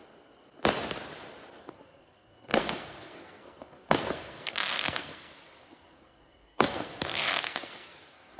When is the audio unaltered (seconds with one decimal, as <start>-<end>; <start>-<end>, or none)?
0.0-1.6